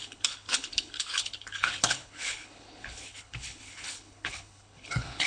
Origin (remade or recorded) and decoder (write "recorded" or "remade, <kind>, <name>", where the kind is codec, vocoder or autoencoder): remade, codec, HILCodec